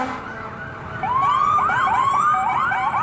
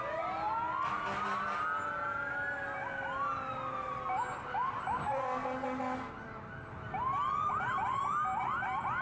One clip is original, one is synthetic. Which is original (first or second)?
second